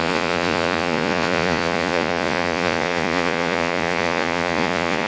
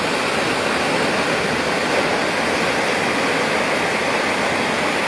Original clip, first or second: second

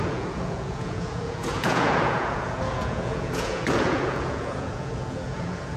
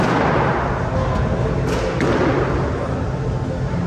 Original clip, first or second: second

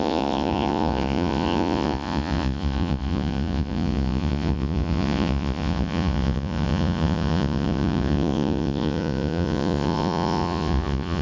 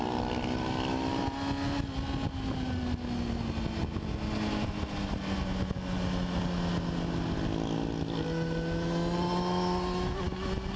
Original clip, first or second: second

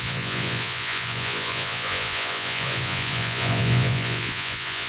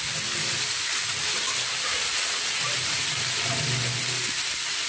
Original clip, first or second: second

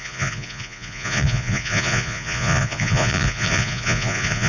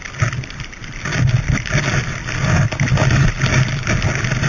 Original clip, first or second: second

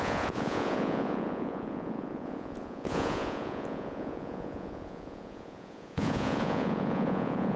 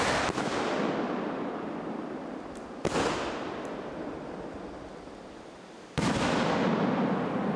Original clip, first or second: second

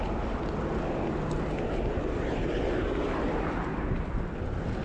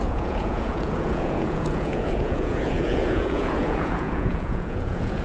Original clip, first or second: first